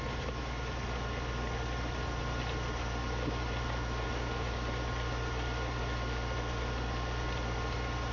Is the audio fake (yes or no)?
no